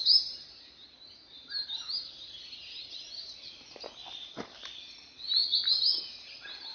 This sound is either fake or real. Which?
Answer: real